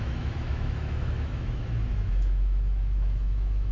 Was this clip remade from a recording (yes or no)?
yes